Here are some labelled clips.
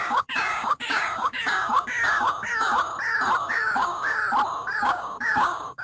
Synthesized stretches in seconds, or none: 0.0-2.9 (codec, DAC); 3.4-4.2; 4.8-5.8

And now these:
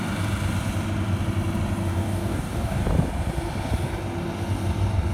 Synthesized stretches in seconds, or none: 1.9-2.8 (codec, DAC)

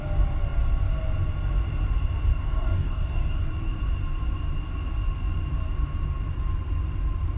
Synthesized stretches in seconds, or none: 2.3-3.5 (codec, DAC)

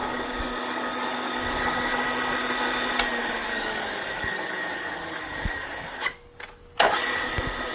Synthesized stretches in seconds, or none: 0.0-1.4 (codec, DAC); 3.4-6.4

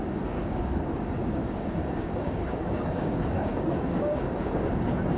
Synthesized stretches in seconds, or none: 0.0-5.2 (codec, DAC)